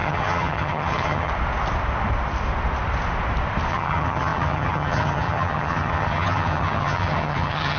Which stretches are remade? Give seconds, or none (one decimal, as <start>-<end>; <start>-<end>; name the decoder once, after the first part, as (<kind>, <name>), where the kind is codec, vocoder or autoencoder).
0.0-1.3 (vocoder, HiFi-GAN); 3.7-7.8